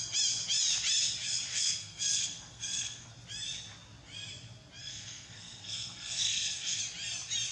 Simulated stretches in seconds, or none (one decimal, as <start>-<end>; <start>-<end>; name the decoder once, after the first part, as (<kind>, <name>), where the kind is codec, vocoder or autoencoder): 1.5-3.1 (codec, SNAC); 4.8-6.8